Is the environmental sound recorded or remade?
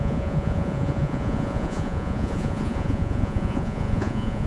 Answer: remade